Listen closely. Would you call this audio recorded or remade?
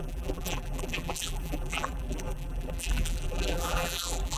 remade